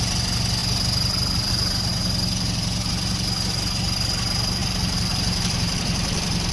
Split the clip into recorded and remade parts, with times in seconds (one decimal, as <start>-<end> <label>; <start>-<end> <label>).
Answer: 0.0-4.6 recorded; 4.6-6.5 remade